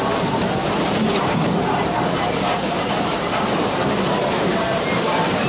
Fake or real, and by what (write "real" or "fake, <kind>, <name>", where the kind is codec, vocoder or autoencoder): fake, vocoder, BigVGAN v2